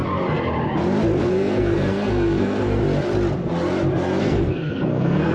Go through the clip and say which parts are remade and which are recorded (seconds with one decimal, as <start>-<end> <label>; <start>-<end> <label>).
0.0-1.2 recorded; 1.2-2.8 remade; 2.8-4.2 recorded; 4.2-5.3 remade